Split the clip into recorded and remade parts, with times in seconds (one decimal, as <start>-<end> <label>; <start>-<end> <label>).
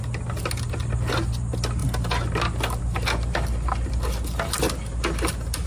0.0-5.7 recorded